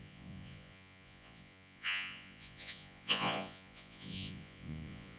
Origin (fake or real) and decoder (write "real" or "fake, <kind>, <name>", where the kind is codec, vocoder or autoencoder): fake, vocoder, Vocos